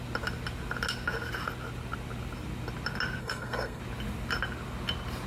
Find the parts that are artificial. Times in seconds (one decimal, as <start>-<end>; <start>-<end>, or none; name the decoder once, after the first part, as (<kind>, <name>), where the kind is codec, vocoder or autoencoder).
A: 3.2-3.8 (codec, SNAC)